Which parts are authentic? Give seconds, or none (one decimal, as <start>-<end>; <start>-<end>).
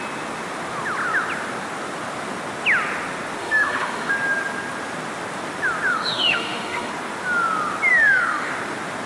0.0-3.4; 4.1-5.9; 6.9-7.9; 8.5-9.1